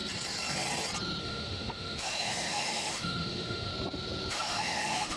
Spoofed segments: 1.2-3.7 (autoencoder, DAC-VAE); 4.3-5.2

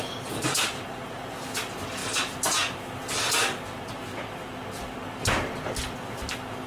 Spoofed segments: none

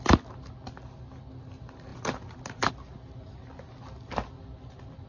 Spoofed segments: none

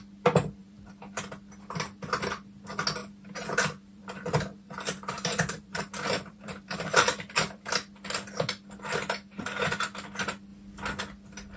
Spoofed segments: 0.6-1.2 (vocoder, BigVGAN v2); 3.0-7.7